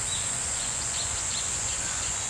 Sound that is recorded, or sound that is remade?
remade